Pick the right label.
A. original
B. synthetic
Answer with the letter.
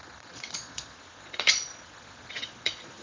B